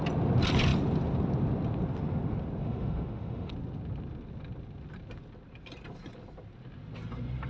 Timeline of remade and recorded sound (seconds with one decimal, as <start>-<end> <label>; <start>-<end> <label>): 0.0-2.6 recorded; 2.6-3.5 remade; 3.5-7.5 recorded